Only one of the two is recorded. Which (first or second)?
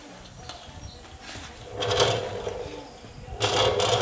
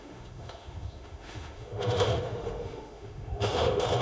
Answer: first